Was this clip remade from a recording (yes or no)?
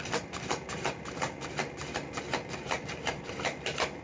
no